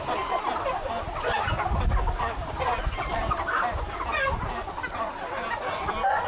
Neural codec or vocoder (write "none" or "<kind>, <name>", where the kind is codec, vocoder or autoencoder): none